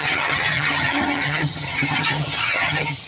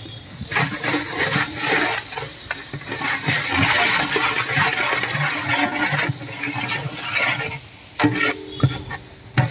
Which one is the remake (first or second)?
first